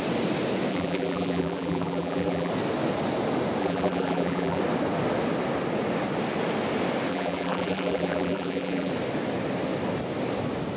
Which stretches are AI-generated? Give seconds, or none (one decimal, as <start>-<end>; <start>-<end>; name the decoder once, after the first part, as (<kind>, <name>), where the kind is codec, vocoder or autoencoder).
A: 0.7-2.5 (vocoder, BigVGAN v2); 3.6-4.6; 7.1-8.9